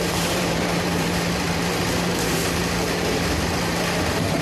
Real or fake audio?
fake